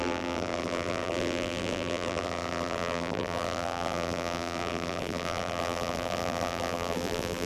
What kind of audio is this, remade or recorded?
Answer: remade